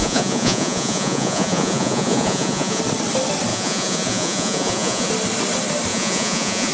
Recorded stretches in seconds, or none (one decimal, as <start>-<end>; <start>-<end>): 2.8-3.5; 5.1-5.9